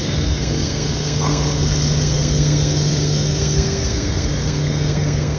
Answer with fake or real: fake